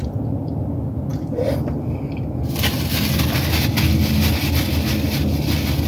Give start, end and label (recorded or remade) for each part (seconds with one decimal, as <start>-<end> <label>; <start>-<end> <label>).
0.0-5.9 recorded